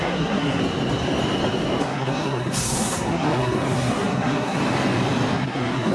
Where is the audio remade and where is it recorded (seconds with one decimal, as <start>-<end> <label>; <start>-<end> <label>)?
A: 0.0-0.6 remade; 0.6-1.8 recorded; 1.8-4.6 remade; 4.6-5.3 recorded; 5.3-5.9 remade